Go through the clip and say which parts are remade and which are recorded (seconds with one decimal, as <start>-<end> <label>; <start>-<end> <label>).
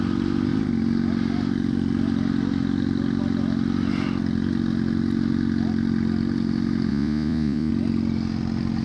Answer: 0.0-6.9 recorded; 6.9-7.7 remade; 7.7-8.8 recorded